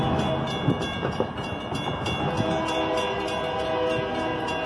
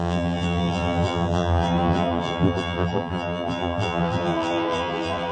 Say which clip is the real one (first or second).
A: first